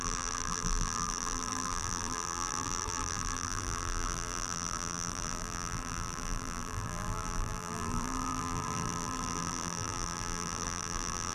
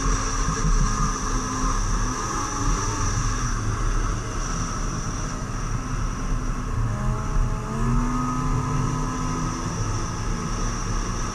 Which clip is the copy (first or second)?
first